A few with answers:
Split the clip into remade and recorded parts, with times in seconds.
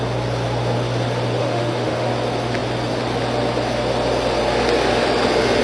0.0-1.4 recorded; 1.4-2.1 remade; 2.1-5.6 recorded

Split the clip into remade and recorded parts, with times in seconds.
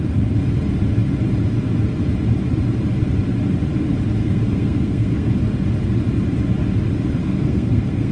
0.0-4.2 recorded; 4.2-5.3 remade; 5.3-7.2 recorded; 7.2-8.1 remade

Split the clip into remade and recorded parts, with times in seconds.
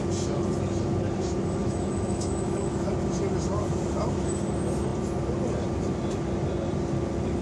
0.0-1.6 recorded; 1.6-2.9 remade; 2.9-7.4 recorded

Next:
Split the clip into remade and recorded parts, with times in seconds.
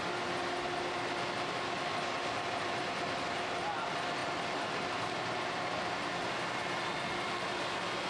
0.0-8.1 recorded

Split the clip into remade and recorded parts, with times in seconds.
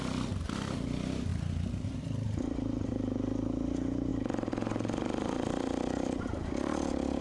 0.0-7.2 remade